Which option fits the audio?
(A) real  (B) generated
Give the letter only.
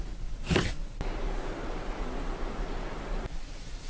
A